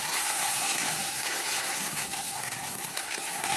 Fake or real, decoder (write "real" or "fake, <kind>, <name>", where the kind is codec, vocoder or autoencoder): fake, codec, SNAC